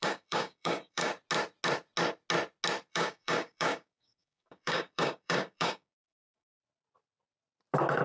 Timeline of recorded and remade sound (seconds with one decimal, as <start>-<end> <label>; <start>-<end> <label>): 0.0-1.1 remade; 1.1-2.9 recorded; 2.9-6.6 remade; 6.6-8.0 recorded